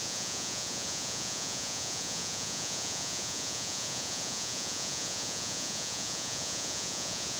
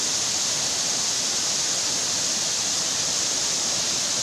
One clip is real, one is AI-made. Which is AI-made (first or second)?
first